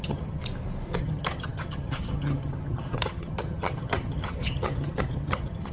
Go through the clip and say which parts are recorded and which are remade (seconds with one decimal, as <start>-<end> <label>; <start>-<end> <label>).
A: 0.0-0.4 remade; 0.4-1.0 recorded; 1.0-5.7 remade